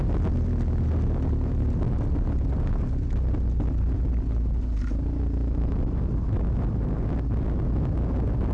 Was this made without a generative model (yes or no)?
yes